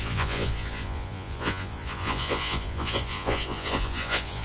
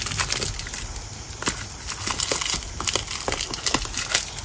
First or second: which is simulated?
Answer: first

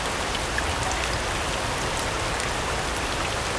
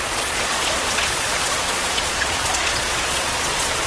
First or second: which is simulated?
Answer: second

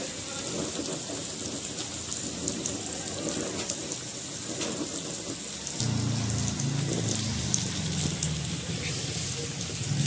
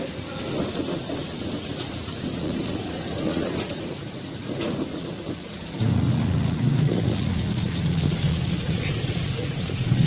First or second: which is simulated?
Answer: second